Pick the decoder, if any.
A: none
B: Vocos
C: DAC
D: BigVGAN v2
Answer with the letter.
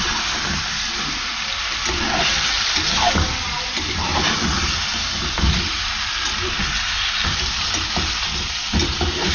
A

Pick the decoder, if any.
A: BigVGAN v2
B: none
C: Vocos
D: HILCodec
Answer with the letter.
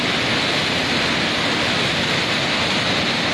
B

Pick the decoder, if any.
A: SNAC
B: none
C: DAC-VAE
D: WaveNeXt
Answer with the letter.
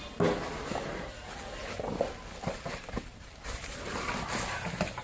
B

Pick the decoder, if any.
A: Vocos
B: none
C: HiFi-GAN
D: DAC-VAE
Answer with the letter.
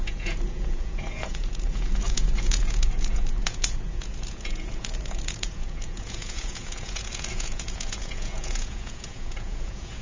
A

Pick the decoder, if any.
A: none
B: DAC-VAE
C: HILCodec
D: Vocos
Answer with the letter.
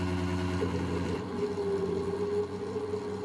A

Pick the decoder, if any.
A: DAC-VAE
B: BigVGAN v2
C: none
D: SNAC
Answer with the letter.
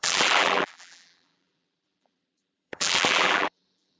B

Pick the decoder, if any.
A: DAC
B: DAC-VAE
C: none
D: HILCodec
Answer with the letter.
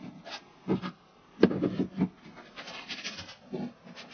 C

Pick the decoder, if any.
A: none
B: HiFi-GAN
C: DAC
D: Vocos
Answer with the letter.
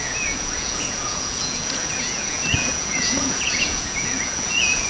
D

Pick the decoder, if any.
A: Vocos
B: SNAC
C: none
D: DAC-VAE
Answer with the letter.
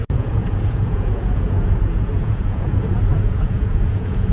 A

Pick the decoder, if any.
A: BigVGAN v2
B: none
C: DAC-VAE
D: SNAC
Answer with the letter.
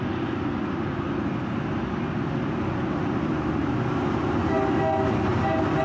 B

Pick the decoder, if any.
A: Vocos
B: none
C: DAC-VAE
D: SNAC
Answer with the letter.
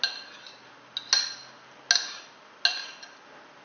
B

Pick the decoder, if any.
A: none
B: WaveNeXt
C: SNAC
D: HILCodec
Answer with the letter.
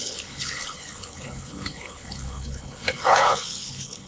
D